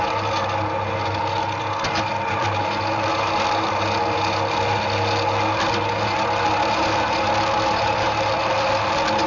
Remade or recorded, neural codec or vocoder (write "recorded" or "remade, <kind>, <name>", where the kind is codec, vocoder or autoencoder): recorded